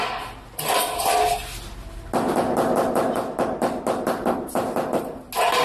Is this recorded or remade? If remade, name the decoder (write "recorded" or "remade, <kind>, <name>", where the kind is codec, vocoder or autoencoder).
recorded